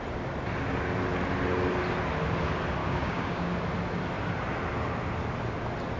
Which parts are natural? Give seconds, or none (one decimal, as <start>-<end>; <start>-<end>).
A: 0.0-2.8; 3.5-6.0